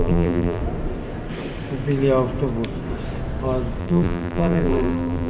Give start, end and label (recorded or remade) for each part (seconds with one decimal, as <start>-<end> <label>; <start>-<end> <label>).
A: 0.0-0.6 remade; 0.6-3.8 recorded; 3.8-5.3 remade